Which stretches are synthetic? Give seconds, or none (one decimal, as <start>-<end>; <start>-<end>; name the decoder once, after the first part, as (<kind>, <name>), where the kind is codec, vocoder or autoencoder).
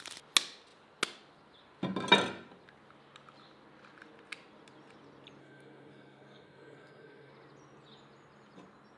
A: 5.4-7.3 (codec, SNAC)